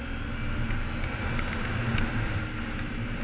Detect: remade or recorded recorded